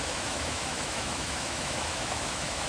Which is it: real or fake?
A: fake